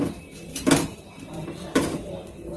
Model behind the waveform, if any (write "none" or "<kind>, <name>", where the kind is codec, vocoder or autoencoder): vocoder, BigVGAN v2